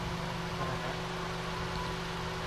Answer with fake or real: real